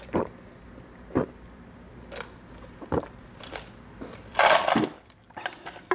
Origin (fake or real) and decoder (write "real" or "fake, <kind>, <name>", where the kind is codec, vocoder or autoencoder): fake, vocoder, BigVGAN v2